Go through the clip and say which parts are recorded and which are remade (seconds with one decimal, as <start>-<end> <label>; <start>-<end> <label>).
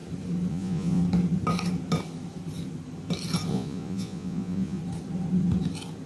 0.0-0.5 recorded; 0.5-1.0 remade; 1.0-3.5 recorded; 3.5-4.8 remade; 4.8-6.1 recorded